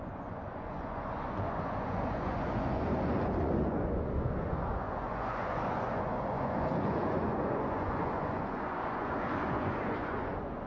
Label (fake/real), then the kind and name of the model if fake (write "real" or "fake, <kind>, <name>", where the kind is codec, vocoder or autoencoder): fake, vocoder, Vocos